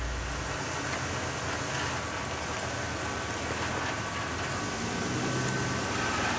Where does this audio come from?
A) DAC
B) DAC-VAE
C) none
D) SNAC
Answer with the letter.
C